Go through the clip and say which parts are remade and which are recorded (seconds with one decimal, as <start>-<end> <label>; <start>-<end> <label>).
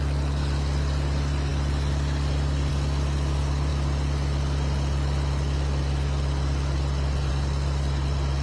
0.0-8.4 recorded